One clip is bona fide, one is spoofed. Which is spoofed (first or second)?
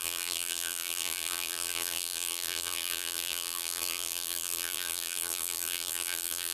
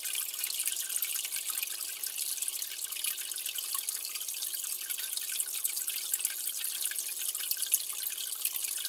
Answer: first